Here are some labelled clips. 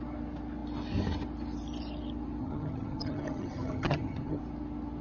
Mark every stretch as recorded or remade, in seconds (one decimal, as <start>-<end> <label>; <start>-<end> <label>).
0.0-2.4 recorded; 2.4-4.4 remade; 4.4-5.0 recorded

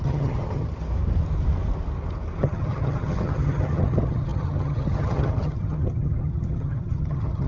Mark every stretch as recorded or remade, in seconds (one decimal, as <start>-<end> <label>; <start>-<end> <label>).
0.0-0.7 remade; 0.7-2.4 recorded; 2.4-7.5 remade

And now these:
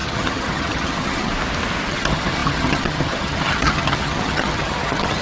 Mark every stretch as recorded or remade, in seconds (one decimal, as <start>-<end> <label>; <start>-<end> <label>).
0.0-1.3 remade; 1.3-1.9 recorded; 1.9-5.2 remade